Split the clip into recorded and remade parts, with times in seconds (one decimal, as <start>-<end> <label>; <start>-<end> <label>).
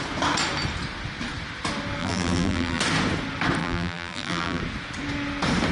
0.0-2.0 recorded; 2.0-2.8 remade; 2.8-3.6 recorded; 3.6-4.6 remade; 4.6-5.7 recorded